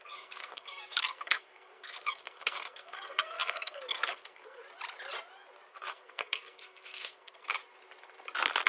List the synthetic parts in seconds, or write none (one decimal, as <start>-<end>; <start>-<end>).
0.0-4.6; 5.7-7.6